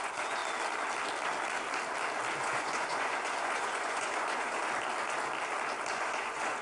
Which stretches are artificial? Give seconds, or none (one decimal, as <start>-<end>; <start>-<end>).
0.0-0.4; 2.4-4.6; 5.9-6.6

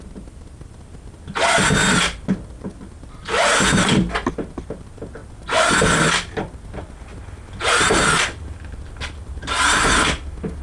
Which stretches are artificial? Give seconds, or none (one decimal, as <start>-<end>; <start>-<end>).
none

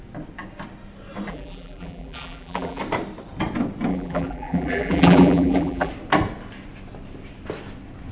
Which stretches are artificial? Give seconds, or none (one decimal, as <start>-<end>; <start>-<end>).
1.3-2.8; 3.9-5.9

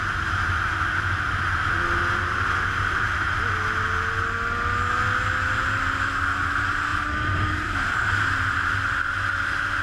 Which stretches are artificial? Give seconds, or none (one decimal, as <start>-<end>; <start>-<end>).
6.9-8.4